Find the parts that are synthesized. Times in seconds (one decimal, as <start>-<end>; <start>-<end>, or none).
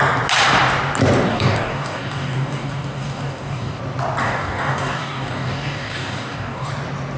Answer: 1.3-3.8; 4.2-6.7